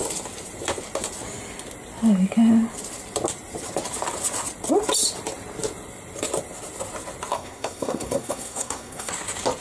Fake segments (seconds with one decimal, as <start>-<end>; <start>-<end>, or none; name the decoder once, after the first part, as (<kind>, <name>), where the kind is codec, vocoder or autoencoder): 7.3-9.1 (codec, SNAC)